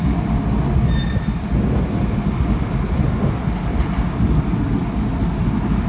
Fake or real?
real